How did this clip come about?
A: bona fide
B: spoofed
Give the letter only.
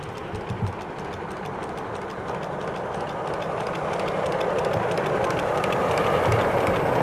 A